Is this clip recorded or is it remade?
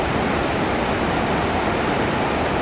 recorded